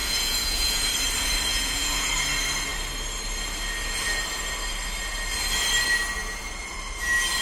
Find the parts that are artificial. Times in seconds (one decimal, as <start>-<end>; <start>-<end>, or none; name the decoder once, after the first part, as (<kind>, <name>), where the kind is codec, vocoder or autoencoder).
0.0-0.9 (vocoder, Vocos); 1.5-2.1